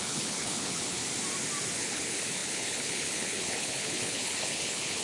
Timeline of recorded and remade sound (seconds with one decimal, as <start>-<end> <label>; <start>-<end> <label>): 0.0-1.0 remade; 1.0-1.8 recorded; 1.8-5.0 remade

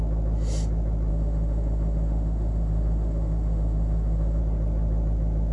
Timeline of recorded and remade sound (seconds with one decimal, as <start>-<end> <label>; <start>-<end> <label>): 0.0-1.1 recorded; 1.1-4.4 remade; 4.4-5.5 recorded